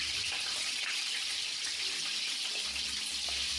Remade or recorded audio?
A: recorded